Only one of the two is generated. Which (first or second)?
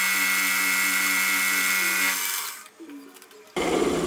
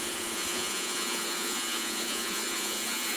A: second